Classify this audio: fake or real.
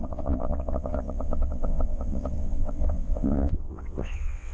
fake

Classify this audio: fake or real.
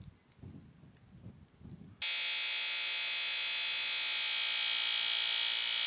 real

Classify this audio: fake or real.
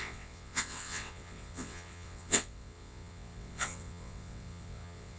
fake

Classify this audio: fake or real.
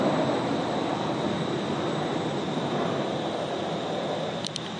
real